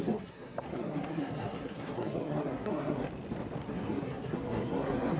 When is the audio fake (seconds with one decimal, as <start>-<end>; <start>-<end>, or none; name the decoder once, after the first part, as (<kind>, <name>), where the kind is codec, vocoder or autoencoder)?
0.0-3.1 (codec, SNAC); 3.6-5.2